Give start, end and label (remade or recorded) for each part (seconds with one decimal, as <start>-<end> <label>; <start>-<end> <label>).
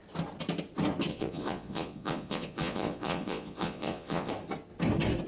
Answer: 0.0-1.1 recorded; 1.1-4.3 remade; 4.3-5.3 recorded